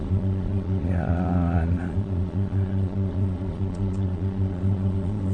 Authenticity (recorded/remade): remade